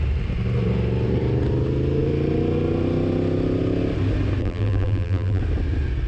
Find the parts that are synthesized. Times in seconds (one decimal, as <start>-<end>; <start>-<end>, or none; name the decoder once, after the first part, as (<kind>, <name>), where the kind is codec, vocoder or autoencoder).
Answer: 4.4-5.4 (vocoder, BigVGAN v2)